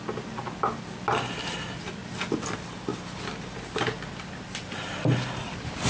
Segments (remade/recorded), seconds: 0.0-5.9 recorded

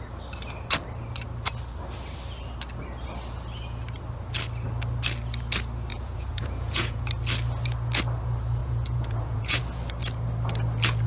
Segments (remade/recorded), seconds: 0.0-5.9 recorded; 5.9-7.0 remade; 7.0-8.6 recorded; 8.6-9.6 remade; 9.6-11.1 recorded

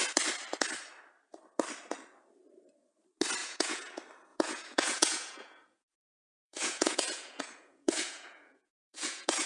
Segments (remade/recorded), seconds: 0.0-3.4 recorded; 3.4-3.9 remade; 3.9-4.3 recorded; 4.3-9.5 remade